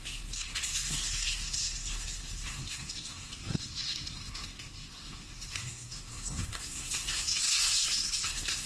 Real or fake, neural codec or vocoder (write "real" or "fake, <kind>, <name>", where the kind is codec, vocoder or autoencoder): fake, codec, SNAC